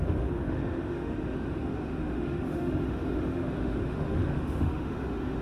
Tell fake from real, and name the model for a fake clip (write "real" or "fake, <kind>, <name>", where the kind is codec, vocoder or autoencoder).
fake, autoencoder, DAC-VAE